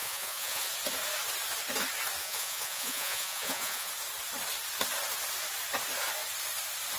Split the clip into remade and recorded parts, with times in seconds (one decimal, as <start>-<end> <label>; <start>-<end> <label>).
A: 0.0-0.7 remade; 0.7-2.2 recorded; 2.2-3.9 remade; 3.9-7.0 recorded